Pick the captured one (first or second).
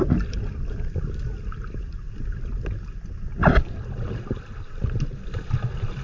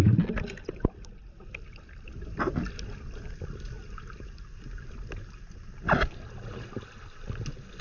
second